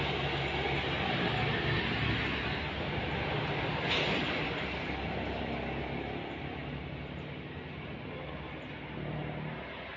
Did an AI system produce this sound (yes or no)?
no